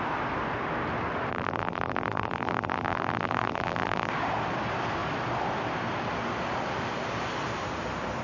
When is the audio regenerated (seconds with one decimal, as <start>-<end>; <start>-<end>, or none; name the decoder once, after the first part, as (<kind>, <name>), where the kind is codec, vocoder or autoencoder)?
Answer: 1.3-4.1 (vocoder, BigVGAN v2)